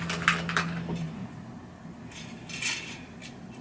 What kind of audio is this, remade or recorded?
recorded